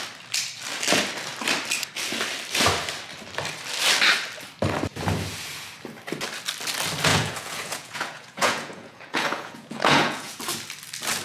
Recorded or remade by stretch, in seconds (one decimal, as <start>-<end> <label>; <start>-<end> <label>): 0.0-7.1 recorded; 7.1-10.4 remade; 10.4-11.2 recorded